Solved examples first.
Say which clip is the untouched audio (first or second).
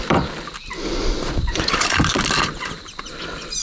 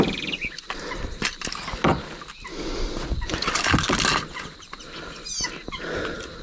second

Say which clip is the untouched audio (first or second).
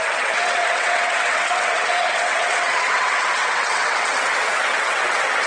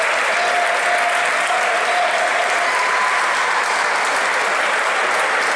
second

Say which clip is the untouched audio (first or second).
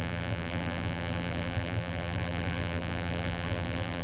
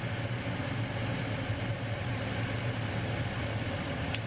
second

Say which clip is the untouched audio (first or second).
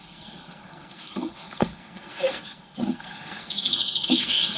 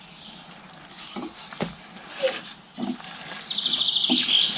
second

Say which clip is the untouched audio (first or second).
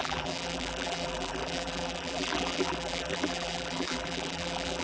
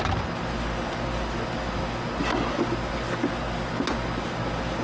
second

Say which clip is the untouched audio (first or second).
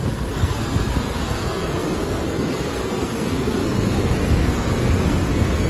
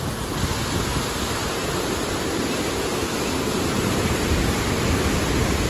second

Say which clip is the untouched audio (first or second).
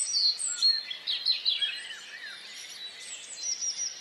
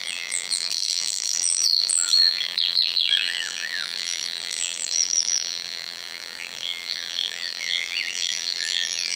first